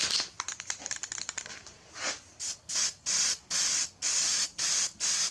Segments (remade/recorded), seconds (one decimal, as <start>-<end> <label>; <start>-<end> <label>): 0.0-5.3 recorded